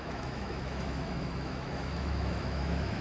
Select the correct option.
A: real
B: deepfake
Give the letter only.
B